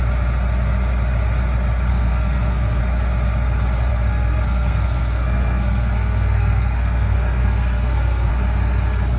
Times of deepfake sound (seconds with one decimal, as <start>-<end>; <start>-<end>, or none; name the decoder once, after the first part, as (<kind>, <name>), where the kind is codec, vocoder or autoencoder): 1.9-2.8 (codec, SNAC); 3.9-8.3